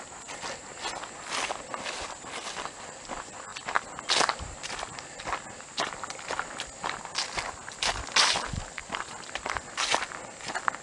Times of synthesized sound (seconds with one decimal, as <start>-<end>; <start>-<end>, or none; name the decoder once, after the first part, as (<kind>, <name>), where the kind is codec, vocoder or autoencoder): none